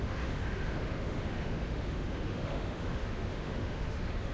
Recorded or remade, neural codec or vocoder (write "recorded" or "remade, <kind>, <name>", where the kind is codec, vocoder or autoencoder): remade, autoencoder, DAC-VAE